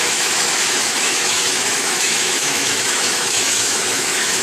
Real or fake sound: fake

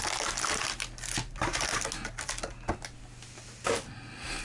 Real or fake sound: real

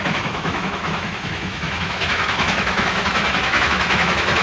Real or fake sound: fake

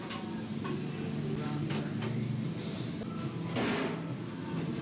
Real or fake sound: real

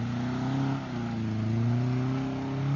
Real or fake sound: real